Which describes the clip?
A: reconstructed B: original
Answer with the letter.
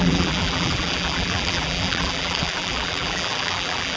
A